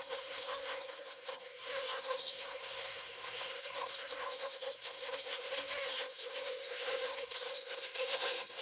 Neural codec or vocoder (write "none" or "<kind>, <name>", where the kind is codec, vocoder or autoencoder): codec, SNAC